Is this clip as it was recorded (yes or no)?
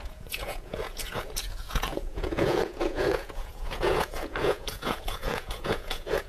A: no